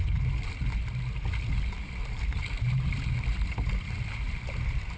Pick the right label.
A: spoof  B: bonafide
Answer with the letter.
B